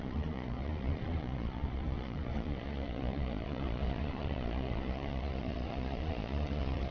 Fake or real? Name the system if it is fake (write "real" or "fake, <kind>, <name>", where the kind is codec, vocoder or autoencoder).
fake, vocoder, Vocos